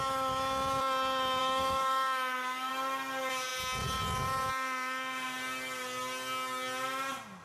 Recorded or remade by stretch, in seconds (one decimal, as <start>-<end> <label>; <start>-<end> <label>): 0.0-1.4 recorded; 1.4-2.7 remade; 2.7-7.4 recorded